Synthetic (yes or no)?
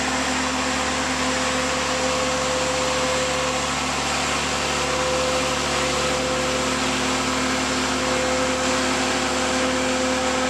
no